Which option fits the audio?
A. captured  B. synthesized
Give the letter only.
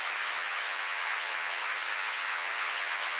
B